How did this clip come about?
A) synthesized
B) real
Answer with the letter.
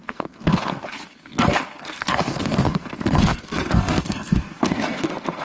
A